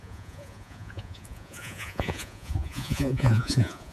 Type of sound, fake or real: fake